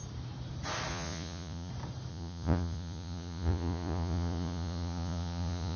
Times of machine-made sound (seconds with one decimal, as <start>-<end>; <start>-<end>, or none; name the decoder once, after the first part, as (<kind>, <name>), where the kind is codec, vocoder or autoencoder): 0.9-1.7 (vocoder, Vocos); 2.1-5.8